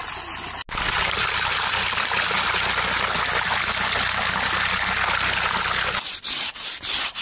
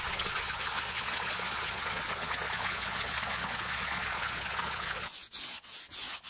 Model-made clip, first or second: second